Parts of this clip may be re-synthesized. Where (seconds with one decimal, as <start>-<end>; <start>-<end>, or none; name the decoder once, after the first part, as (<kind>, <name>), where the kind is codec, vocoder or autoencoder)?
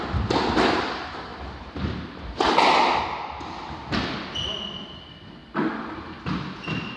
1.3-2.5 (vocoder, BigVGAN v2); 5.4-6.2